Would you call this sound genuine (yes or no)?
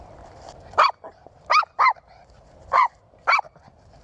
yes